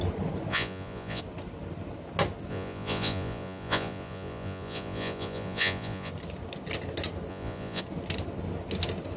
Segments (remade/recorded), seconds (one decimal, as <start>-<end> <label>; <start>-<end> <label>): 0.0-0.5 recorded; 0.5-1.2 remade; 1.2-2.5 recorded; 2.5-6.1 remade; 6.1-7.3 recorded; 7.3-7.8 remade; 7.8-9.2 recorded

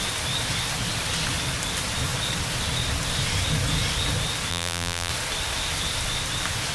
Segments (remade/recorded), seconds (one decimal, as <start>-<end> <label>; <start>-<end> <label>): 0.0-4.5 recorded; 4.5-5.1 remade; 5.1-6.7 recorded

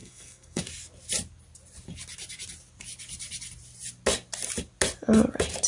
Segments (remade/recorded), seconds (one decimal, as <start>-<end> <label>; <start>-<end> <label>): 0.0-0.6 remade; 0.6-5.7 recorded

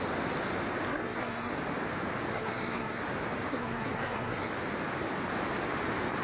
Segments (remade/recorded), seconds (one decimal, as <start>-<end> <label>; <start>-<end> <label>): 0.0-0.9 recorded; 0.9-1.5 remade; 1.5-2.3 recorded; 2.3-3.0 remade; 3.0-3.5 recorded; 3.5-4.5 remade; 4.5-6.2 recorded

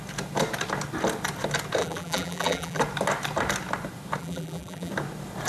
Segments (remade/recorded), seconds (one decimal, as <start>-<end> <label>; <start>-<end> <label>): 0.0-1.8 recorded; 1.8-2.8 remade; 2.8-4.2 recorded; 4.2-4.9 remade; 4.9-5.5 recorded

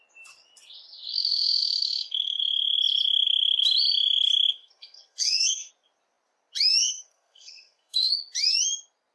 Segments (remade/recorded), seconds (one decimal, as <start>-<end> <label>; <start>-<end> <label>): 0.0-1.1 recorded; 1.1-2.4 remade; 2.4-4.5 recorded; 4.5-5.7 remade; 5.7-6.8 recorded; 6.8-8.1 remade; 8.1-9.1 recorded

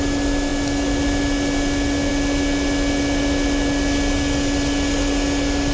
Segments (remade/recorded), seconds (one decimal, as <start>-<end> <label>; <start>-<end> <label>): 0.0-5.7 recorded